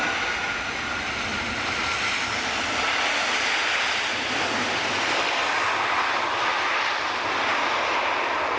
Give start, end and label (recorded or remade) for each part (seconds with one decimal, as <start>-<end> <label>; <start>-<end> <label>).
0.0-8.6 recorded

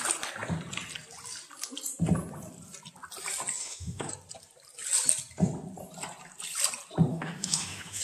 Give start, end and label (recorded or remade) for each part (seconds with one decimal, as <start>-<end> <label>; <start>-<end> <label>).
0.0-3.6 recorded; 3.6-4.1 remade; 4.1-7.1 recorded; 7.1-8.0 remade

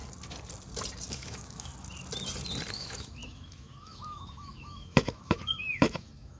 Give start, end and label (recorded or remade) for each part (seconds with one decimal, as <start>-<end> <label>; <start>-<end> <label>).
0.0-1.1 recorded; 1.1-1.7 remade; 1.7-2.7 recorded; 2.7-6.4 remade

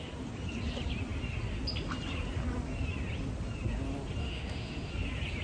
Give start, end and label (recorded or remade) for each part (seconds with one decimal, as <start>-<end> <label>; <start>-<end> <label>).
0.0-4.2 recorded; 4.2-4.9 remade; 4.9-5.4 recorded

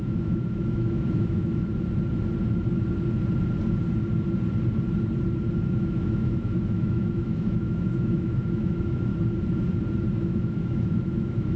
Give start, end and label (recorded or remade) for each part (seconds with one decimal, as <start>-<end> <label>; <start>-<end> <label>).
0.0-1.7 remade; 1.7-5.7 recorded; 5.7-9.1 remade; 9.1-10.2 recorded; 10.2-11.6 remade

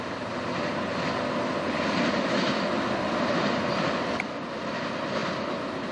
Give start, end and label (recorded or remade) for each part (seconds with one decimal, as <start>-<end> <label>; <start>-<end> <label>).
0.0-5.9 recorded